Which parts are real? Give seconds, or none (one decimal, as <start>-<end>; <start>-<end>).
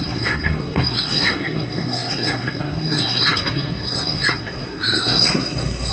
none